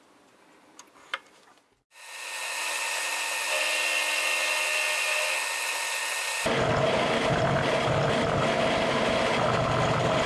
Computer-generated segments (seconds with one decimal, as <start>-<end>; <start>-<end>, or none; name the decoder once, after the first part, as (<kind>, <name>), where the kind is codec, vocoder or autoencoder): none